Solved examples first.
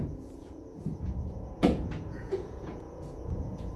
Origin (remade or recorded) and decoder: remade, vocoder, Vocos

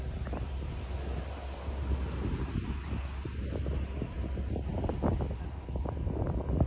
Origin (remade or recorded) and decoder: recorded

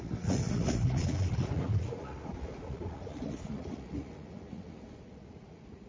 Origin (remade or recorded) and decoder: remade, vocoder, Vocos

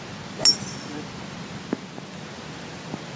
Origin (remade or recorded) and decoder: recorded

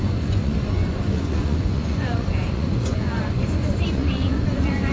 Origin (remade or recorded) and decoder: remade, vocoder, Vocos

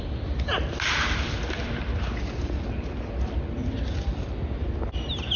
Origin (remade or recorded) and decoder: recorded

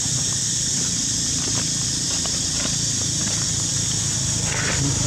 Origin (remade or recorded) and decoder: recorded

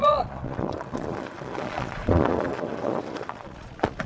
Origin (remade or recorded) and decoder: remade, vocoder, Vocos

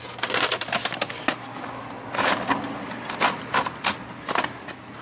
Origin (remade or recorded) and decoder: recorded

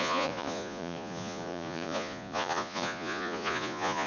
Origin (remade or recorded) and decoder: remade, vocoder, Vocos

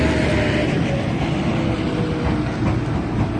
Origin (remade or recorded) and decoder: recorded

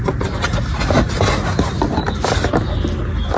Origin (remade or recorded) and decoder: recorded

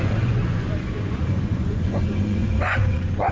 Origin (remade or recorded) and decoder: remade, vocoder, Vocos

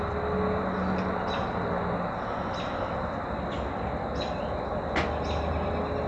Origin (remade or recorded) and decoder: recorded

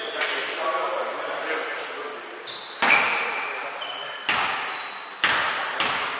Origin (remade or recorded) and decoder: recorded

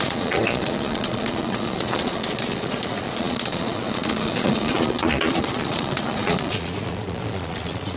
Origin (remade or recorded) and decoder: remade, vocoder, Vocos